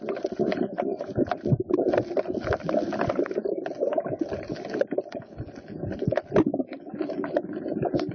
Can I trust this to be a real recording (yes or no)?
yes